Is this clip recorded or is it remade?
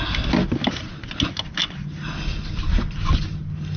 recorded